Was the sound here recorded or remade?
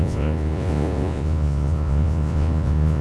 remade